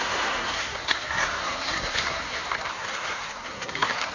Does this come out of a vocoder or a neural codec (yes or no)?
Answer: yes